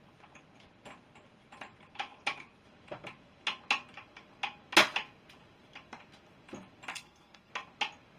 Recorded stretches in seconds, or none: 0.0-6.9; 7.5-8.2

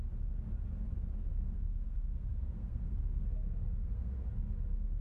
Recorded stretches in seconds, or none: 0.0-1.3; 4.3-5.0

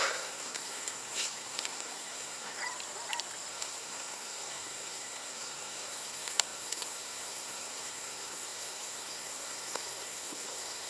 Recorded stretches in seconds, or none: 2.6-3.5

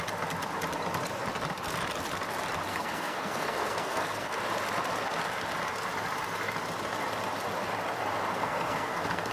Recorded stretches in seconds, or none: 0.0-2.7; 4.4-8.3

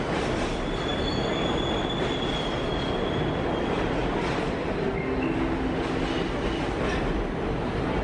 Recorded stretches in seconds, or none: 0.0-8.0

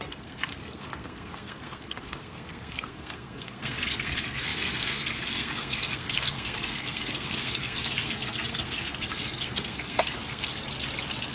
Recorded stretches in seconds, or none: 10.5-11.3